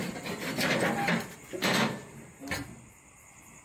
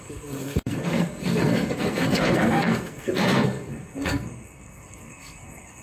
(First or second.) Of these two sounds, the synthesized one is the second